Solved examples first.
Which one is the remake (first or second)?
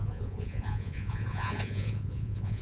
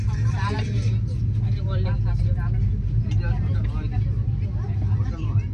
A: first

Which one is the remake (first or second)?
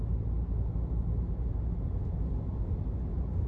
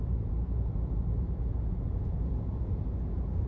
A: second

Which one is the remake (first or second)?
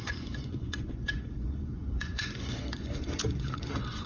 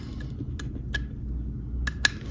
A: first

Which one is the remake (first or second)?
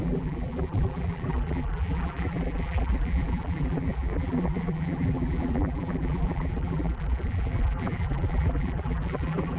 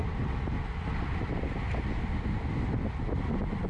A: first